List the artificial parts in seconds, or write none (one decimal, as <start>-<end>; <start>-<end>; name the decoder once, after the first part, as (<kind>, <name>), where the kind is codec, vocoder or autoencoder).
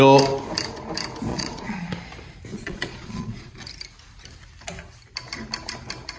1.3-2.0 (vocoder, Vocos); 2.5-3.6